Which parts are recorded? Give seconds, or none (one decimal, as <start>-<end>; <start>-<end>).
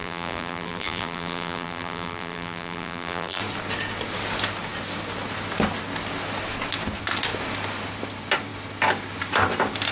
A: 3.4-9.9